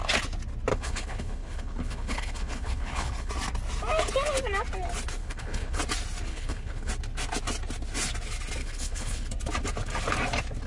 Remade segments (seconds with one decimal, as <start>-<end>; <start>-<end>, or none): 0.7-3.3; 5.2-5.8; 6.3-6.9; 8.6-9.3